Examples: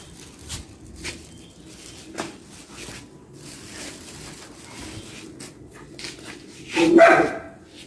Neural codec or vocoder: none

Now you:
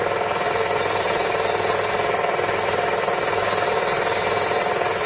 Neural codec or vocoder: none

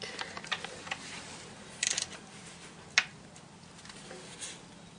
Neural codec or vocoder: none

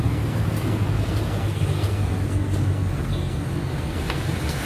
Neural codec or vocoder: codec, SNAC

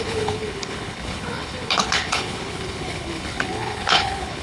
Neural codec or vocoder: codec, HILCodec